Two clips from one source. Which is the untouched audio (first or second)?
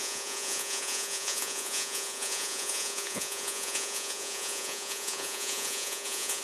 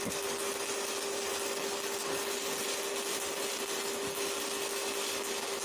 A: second